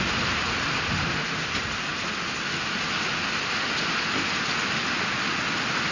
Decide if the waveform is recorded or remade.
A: recorded